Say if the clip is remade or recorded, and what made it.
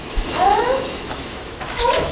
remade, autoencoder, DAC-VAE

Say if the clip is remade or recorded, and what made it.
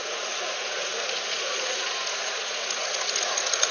remade, vocoder, Vocos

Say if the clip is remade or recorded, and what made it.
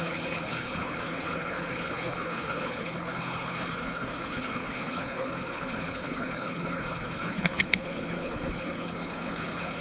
remade, codec, HILCodec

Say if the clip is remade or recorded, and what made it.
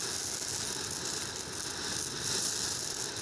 recorded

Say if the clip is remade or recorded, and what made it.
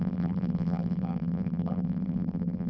remade, vocoder, BigVGAN v2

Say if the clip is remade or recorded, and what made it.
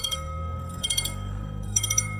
remade, codec, SNAC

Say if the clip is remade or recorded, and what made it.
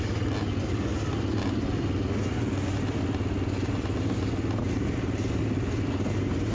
recorded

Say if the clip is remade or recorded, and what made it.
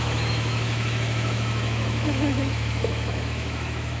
remade, autoencoder, DAC-VAE